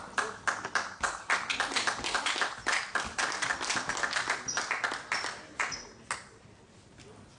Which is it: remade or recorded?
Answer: recorded